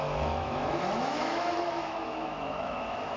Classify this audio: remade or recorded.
remade